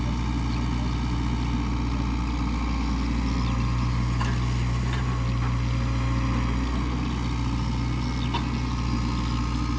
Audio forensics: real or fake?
real